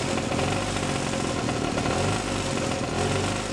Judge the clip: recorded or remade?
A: recorded